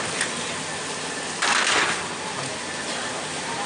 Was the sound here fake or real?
real